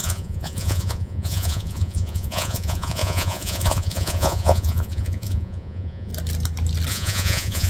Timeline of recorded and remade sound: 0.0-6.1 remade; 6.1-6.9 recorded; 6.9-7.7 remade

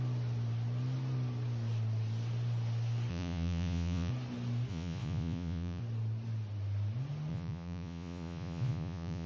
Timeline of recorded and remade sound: 0.0-3.1 recorded; 3.1-4.1 remade; 4.1-4.7 recorded; 4.7-5.8 remade; 5.8-7.3 recorded; 7.3-9.3 remade

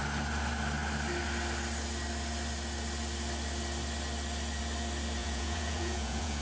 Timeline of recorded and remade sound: 0.0-5.2 recorded; 5.2-6.4 remade

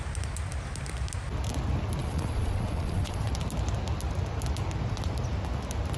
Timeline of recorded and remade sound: 0.0-2.0 recorded; 2.0-3.3 remade; 3.3-6.0 recorded

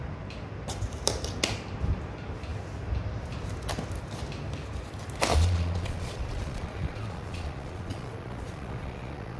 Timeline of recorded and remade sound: 0.0-5.3 recorded; 5.3-9.4 remade

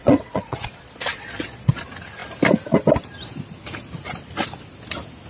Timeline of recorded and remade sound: 0.0-1.8 remade; 1.8-5.3 recorded